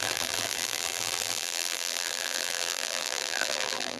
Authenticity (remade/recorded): remade